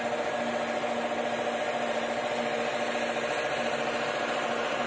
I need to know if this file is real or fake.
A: real